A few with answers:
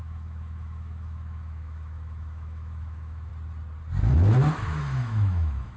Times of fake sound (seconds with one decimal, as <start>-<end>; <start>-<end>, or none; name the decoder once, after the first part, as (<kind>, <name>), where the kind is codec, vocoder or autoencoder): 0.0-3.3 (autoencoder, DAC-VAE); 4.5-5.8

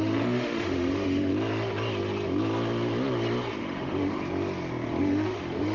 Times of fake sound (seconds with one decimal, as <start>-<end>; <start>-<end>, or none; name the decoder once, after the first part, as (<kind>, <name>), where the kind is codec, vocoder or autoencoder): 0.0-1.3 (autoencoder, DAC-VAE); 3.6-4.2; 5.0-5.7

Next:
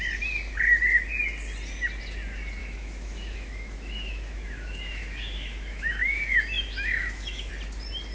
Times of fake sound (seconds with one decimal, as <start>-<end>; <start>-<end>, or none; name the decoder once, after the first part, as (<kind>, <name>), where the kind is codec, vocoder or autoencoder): 2.6-7.5 (autoencoder, DAC-VAE)